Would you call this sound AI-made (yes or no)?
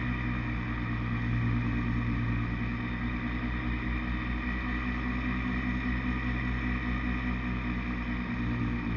no